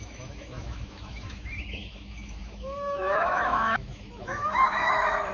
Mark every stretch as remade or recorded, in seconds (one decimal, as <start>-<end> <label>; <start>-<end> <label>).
0.0-5.3 remade